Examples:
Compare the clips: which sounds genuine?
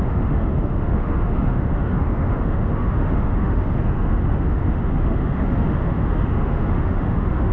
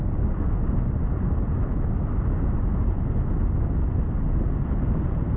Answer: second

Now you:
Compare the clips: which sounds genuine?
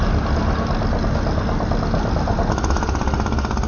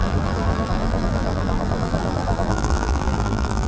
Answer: first